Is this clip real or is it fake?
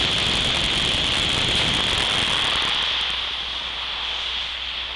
real